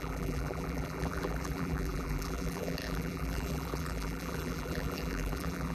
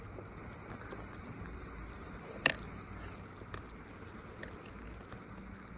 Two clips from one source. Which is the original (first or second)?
second